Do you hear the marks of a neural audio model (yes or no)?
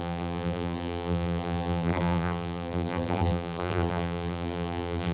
yes